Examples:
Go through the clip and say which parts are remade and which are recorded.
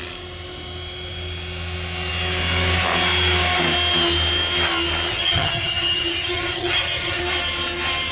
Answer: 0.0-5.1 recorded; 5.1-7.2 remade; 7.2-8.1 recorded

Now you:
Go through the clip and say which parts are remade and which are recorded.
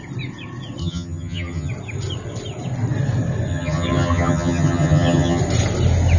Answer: 0.0-0.8 recorded; 0.8-1.7 remade; 1.7-3.5 recorded; 3.5-5.4 remade; 5.4-6.2 recorded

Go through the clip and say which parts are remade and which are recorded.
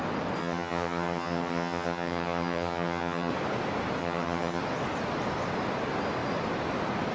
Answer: 0.0-0.4 recorded; 0.4-3.3 remade; 3.3-4.0 recorded; 4.0-4.6 remade; 4.6-7.1 recorded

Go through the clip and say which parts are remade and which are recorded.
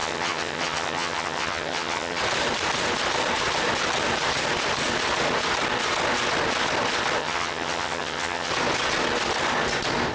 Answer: 0.0-2.2 remade; 2.2-7.2 recorded; 7.2-8.5 remade; 8.5-10.1 recorded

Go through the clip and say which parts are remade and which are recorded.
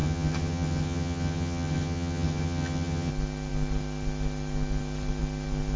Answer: 0.0-3.1 remade; 3.1-5.8 recorded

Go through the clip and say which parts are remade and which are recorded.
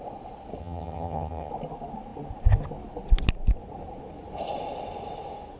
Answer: 0.0-0.6 recorded; 0.6-1.5 remade; 1.5-5.6 recorded